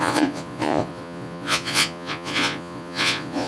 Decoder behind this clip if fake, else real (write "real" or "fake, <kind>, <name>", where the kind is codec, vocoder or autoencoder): fake, vocoder, Vocos